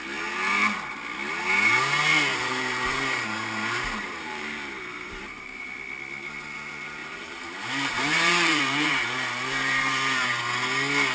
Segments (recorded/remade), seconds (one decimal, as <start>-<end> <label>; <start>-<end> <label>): 0.0-2.3 recorded; 2.3-5.7 remade; 5.7-7.0 recorded; 7.0-10.4 remade; 10.4-11.1 recorded